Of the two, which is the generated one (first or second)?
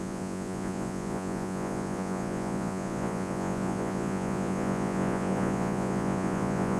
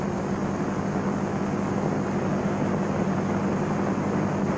first